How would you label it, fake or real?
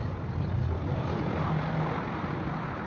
real